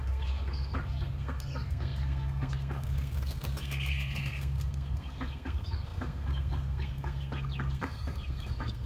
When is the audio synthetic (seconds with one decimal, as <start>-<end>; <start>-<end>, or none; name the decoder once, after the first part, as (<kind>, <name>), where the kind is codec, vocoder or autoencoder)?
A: 0.0-8.9 (codec, SNAC)